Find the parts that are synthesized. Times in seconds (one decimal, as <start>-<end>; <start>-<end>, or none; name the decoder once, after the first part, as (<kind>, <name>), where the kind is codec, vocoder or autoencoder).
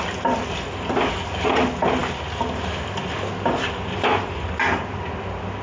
none